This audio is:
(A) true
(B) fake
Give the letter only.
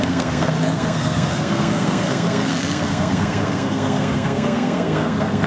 B